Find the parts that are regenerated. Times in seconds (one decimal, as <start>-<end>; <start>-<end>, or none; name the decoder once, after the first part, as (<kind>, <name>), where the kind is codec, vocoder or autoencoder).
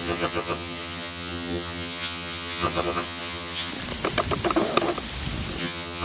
0.0-3.7 (vocoder, HiFi-GAN); 5.6-6.0